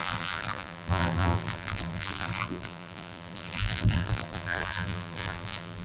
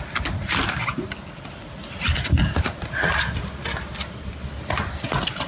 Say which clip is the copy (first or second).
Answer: first